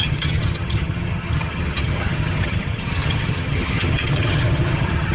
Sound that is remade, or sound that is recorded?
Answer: remade